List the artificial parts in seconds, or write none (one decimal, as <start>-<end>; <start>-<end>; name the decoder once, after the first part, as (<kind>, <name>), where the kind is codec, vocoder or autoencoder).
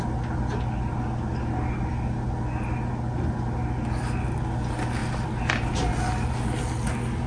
none